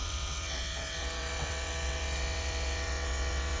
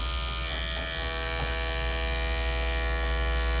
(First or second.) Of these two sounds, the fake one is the first